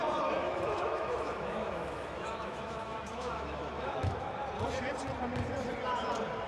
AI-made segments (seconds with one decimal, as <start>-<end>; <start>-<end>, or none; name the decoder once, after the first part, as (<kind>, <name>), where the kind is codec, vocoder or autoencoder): 0.4-4.3 (autoencoder, DAC-VAE)